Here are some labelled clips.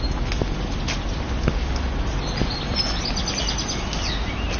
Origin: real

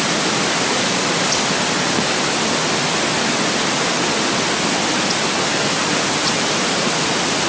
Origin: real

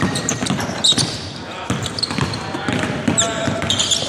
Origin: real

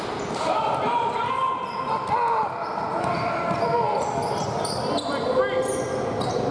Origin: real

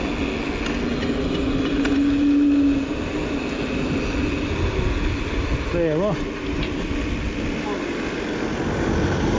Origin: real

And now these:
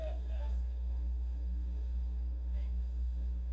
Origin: fake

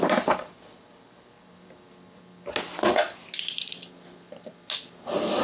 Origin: real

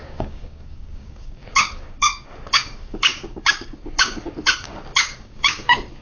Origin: fake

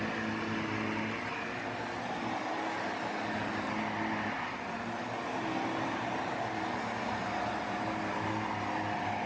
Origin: real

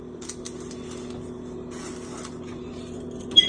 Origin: real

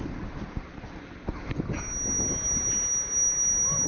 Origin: real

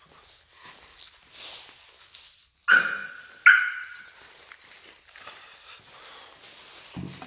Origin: real